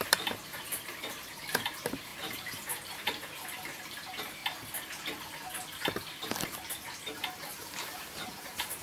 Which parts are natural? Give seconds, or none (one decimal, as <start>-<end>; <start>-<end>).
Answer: 4.4-7.5